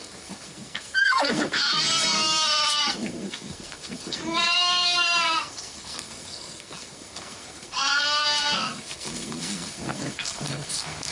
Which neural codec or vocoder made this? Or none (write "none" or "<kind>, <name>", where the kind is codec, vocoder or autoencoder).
codec, SNAC